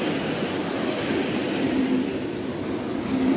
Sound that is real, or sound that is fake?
real